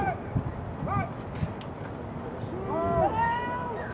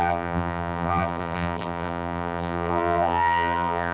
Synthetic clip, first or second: second